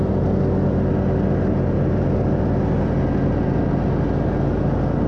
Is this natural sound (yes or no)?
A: yes